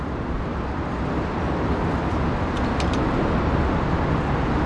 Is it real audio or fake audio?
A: real